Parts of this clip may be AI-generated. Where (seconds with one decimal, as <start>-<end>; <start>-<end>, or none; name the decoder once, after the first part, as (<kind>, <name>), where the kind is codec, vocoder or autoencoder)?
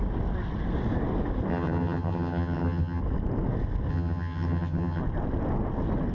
1.5-3.0 (vocoder, HiFi-GAN); 3.9-5.0